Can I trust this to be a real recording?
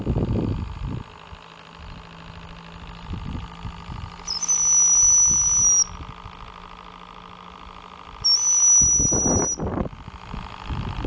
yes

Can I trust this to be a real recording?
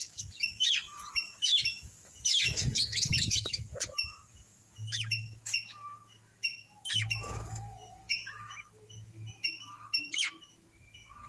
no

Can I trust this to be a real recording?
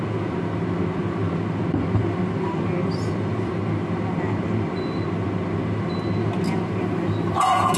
yes